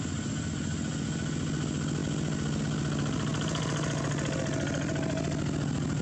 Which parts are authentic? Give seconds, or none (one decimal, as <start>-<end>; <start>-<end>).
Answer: 0.0-6.0